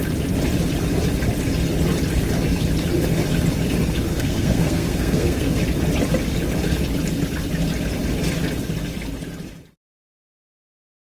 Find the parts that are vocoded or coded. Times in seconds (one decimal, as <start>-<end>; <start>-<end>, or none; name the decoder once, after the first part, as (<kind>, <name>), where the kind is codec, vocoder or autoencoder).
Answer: 4.1-5.6 (codec, SNAC)